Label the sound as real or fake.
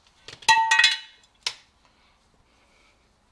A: real